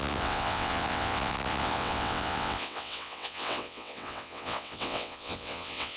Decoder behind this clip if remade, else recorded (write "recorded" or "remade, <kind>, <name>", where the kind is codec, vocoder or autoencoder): remade, vocoder, WaveNeXt